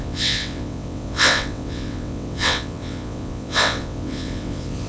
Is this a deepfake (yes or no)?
yes